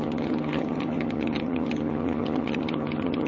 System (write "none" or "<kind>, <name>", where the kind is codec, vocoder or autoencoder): vocoder, HiFi-GAN